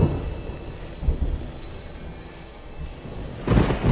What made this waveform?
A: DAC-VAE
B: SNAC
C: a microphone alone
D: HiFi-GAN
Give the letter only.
C